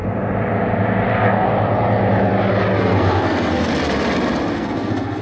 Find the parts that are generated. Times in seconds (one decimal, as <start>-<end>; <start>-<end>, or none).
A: 1.1-1.5; 2.8-3.7; 4.5-5.2